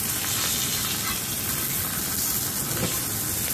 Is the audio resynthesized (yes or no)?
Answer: no